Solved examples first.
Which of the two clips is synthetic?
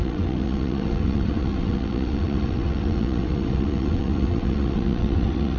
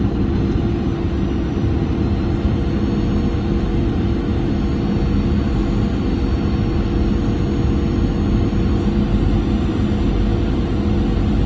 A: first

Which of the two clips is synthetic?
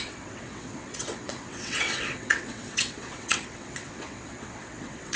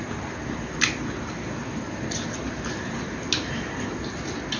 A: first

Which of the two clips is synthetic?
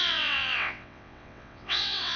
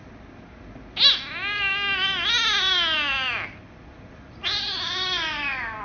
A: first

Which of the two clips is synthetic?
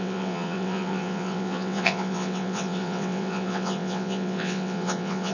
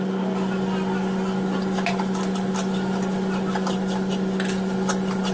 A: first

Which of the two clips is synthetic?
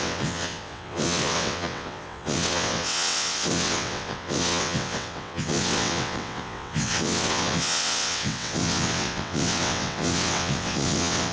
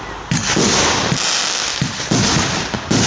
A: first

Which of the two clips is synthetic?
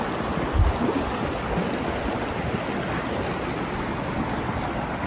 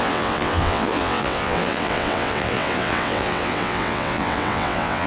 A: second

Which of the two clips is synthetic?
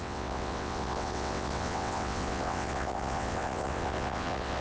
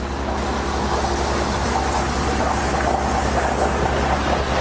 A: first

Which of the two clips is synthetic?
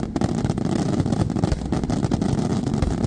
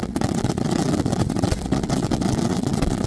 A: second